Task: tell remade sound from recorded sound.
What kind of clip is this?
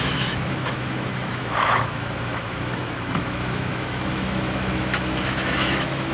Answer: remade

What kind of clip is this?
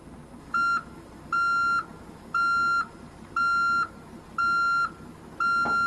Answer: recorded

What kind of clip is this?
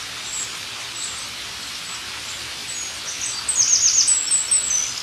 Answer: recorded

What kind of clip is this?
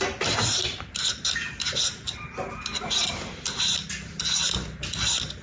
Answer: recorded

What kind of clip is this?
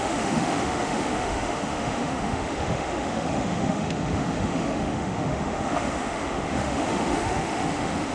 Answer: remade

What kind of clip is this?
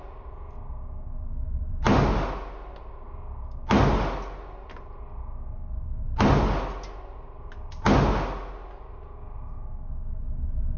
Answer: recorded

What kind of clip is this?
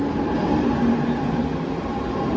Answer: recorded